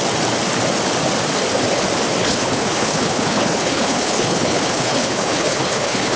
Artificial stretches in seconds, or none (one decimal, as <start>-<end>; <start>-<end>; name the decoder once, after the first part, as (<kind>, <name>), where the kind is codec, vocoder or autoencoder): 2.2-6.2 (codec, HILCodec)